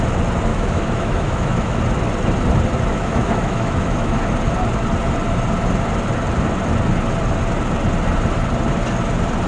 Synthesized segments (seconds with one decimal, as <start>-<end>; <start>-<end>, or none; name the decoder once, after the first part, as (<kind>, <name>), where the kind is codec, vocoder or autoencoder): 0.5-1.8 (autoencoder, DAC-VAE); 2.9-4.2